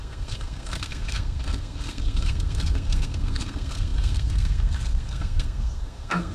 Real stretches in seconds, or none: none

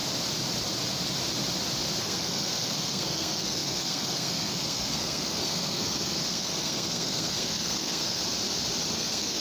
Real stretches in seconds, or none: 0.0-2.0; 8.2-8.9